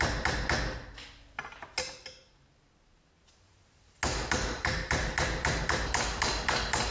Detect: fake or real real